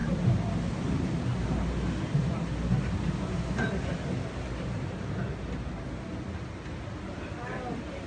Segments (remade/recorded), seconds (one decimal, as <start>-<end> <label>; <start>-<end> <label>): 0.0-8.1 recorded

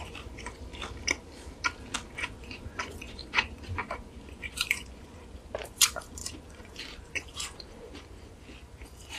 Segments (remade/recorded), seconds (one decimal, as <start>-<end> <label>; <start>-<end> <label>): 0.0-0.7 remade; 0.7-2.1 recorded; 2.1-9.2 remade

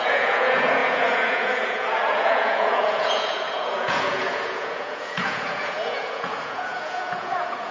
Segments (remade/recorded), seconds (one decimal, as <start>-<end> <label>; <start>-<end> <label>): 0.0-7.7 remade

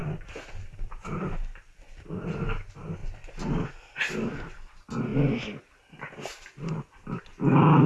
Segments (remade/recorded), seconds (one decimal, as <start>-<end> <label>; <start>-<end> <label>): 0.0-7.9 recorded